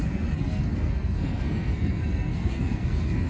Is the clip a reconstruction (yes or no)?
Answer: yes